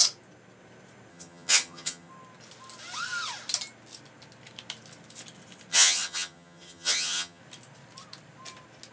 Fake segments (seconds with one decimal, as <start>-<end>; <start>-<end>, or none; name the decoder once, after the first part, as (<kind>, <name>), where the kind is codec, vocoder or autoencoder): 1.1-2.1 (vocoder, HiFi-GAN); 5.7-7.4

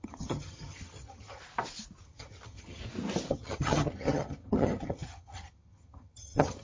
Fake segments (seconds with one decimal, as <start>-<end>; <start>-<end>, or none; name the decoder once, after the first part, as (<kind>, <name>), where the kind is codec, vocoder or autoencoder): 0.0-1.4 (vocoder, HiFi-GAN); 2.0-2.8; 3.3-6.6

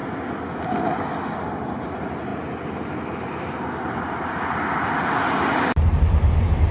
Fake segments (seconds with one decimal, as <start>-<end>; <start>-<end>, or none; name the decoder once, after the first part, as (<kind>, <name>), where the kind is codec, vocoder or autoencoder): none

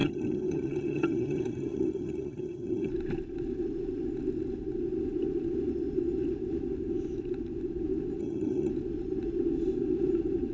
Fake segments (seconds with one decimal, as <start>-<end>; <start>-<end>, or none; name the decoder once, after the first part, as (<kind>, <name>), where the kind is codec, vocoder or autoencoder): 0.0-2.9 (vocoder, HiFi-GAN); 8.2-8.7

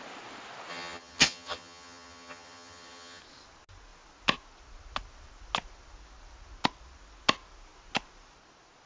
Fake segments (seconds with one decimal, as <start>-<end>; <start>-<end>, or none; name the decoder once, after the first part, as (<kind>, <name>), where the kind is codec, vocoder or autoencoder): 0.7-3.2 (vocoder, HiFi-GAN)

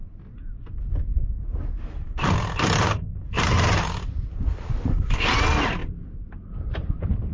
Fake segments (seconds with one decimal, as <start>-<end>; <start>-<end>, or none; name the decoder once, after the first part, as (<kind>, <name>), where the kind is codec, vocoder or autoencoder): none

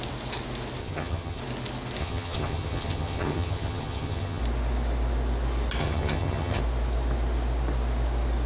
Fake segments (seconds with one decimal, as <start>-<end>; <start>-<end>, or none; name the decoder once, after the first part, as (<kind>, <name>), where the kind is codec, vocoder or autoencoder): 0.8-1.4 (vocoder, HiFi-GAN); 2.0-4.4; 5.8-6.6

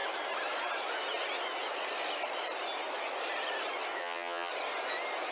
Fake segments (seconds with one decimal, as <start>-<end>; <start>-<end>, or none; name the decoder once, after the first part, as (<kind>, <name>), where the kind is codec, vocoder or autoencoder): 4.0-4.5 (vocoder, HiFi-GAN)